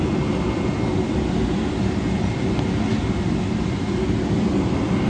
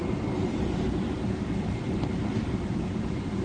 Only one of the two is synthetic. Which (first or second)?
second